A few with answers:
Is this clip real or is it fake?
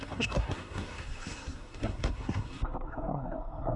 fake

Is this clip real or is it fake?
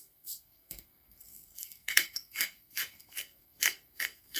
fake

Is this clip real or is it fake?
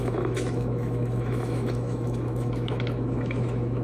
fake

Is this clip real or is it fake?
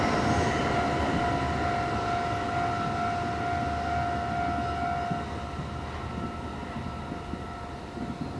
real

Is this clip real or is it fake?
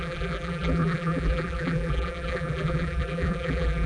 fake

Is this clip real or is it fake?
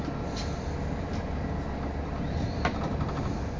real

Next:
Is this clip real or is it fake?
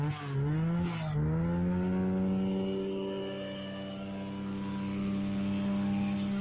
real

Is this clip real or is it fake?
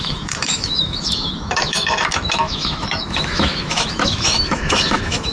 fake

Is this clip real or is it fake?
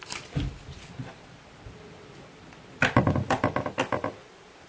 real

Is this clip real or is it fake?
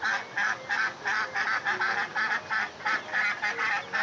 real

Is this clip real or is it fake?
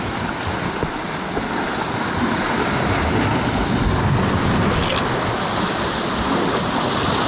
real